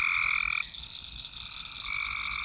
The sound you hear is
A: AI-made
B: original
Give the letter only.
B